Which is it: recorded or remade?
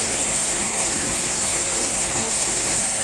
remade